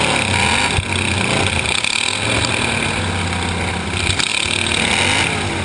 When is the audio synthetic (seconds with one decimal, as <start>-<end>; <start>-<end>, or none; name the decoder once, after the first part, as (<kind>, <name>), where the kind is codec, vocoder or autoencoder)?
none

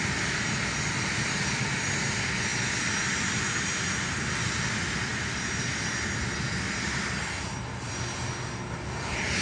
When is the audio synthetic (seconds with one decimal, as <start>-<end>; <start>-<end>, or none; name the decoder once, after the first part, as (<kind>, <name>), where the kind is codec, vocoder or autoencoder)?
none

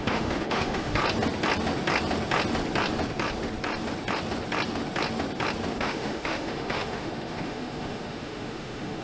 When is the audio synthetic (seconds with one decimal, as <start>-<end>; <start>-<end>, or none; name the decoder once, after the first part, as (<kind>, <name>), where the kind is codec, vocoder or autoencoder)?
0.0-1.0 (autoencoder, DAC-VAE); 5.7-9.0

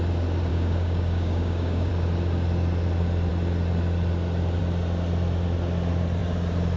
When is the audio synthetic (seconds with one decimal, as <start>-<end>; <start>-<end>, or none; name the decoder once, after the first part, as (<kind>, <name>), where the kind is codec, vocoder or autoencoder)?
0.5-1.9 (codec, DAC)

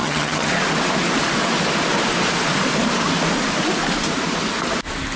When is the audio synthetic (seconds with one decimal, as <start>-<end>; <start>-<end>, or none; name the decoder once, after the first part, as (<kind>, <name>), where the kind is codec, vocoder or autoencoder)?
0.0-0.5 (vocoder, HiFi-GAN)

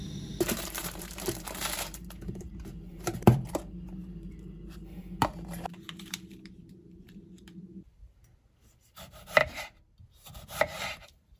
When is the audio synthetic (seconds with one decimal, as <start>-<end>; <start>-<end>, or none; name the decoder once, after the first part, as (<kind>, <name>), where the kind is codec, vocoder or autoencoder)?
0.0-11.4 (vocoder, BigVGAN v2)

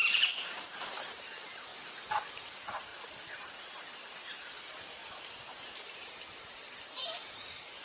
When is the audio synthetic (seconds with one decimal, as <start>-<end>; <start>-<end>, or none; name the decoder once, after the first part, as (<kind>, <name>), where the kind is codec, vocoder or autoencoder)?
0.0-1.7 (vocoder, BigVGAN v2); 2.3-7.8